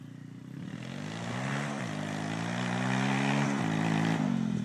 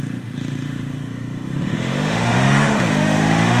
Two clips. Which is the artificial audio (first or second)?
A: second